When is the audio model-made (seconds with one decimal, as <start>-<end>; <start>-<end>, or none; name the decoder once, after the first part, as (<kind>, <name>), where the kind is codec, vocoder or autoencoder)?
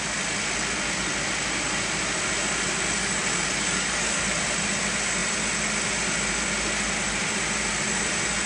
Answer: 3.0-4.2 (codec, DAC)